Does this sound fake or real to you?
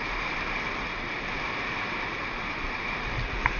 real